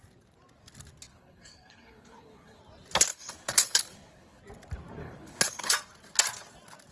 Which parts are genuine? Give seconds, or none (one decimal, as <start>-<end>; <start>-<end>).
0.0-1.1; 2.6-3.1; 4.4-5.0; 5.7-6.9